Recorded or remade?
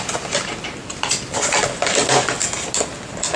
recorded